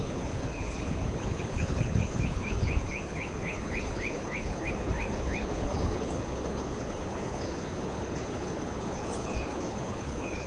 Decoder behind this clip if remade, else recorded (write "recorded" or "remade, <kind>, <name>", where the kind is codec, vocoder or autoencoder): remade, codec, HILCodec